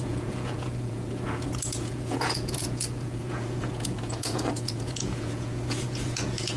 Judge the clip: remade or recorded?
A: remade